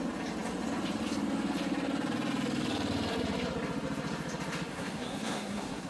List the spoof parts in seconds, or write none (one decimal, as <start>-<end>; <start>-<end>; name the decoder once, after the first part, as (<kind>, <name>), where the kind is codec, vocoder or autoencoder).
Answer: 4.7-5.9 (codec, SNAC)